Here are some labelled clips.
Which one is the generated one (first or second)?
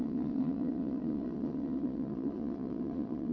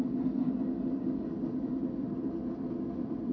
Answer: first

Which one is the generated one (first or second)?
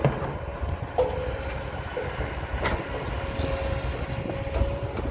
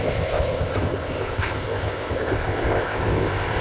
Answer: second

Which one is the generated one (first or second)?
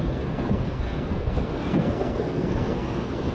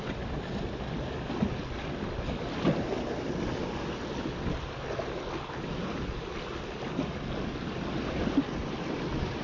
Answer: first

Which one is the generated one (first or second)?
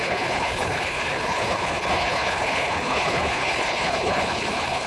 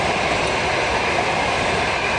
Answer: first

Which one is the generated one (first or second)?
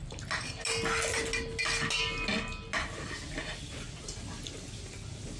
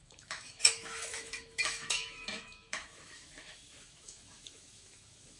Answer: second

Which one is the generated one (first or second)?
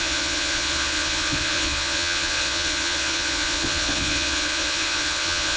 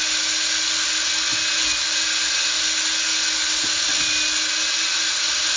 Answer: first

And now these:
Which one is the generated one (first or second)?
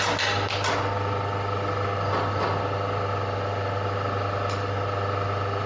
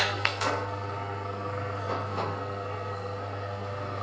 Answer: second